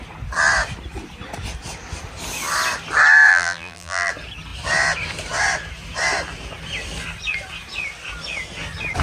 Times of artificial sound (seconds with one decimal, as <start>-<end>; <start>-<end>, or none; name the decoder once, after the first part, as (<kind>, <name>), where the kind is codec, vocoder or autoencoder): 3.3-4.1 (vocoder, BigVGAN v2)